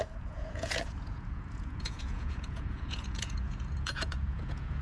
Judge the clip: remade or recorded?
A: remade